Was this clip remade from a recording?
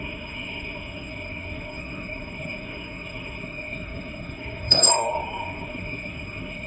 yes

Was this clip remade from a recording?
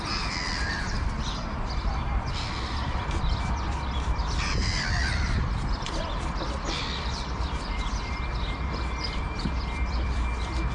yes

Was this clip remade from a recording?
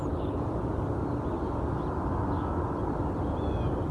no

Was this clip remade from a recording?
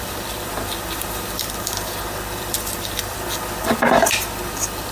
yes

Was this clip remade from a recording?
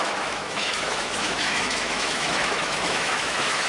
yes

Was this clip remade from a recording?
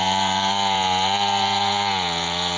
yes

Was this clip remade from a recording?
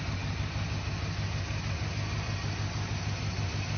no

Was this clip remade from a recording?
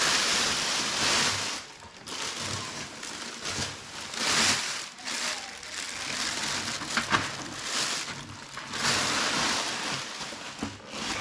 no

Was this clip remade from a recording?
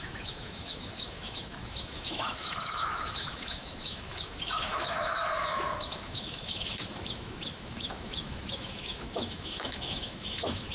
yes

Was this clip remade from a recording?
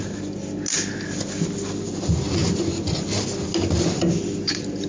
no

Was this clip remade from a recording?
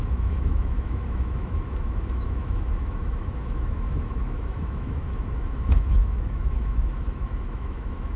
yes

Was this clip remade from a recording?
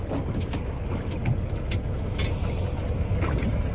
no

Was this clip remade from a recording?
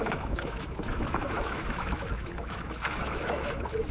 yes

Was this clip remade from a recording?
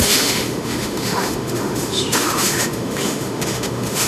yes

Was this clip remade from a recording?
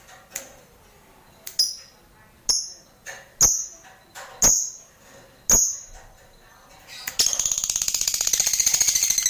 no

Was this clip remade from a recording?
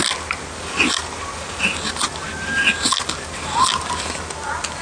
no